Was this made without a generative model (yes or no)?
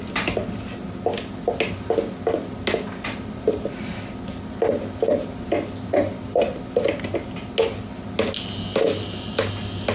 yes